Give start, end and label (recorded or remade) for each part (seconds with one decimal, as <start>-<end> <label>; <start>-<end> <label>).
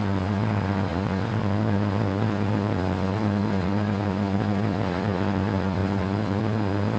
0.0-7.0 remade